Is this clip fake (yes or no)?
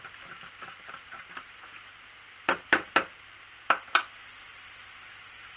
no